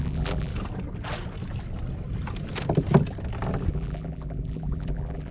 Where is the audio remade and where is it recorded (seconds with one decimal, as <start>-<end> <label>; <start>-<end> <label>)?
0.0-0.5 remade; 0.5-3.7 recorded; 3.7-5.3 remade